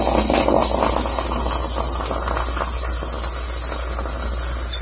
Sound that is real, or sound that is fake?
real